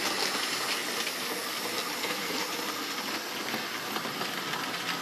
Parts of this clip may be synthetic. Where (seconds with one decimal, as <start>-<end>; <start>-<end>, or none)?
2.0-2.5